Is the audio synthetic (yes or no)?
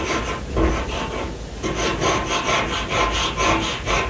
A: no